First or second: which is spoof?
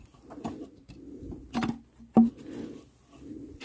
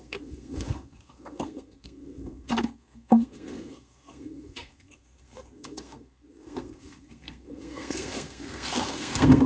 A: second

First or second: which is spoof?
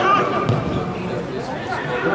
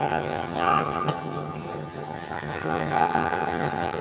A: second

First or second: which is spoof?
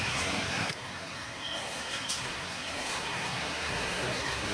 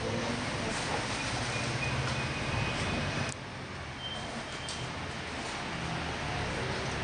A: first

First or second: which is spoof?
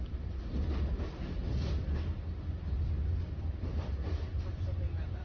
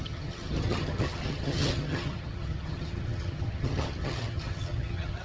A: second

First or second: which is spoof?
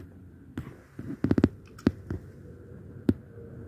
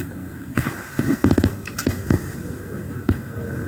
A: second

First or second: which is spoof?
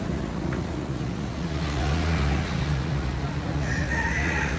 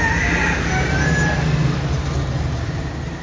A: first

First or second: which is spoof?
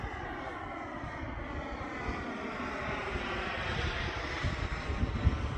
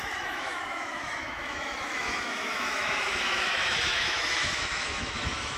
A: second